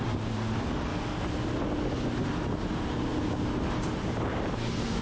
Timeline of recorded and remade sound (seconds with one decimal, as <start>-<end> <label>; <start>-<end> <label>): 0.0-0.9 remade; 0.9-2.6 recorded; 2.6-3.1 remade; 3.1-3.7 recorded; 3.7-5.0 remade